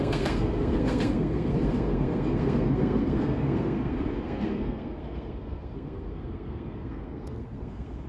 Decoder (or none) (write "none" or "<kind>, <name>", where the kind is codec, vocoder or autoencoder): codec, SNAC